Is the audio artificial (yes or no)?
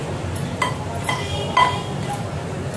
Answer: no